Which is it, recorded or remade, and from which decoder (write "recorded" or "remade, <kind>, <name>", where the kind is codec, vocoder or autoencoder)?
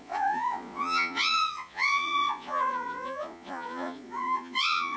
remade, vocoder, Vocos